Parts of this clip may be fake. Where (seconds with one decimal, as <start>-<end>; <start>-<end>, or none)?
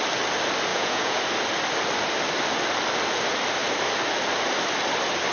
0.7-1.2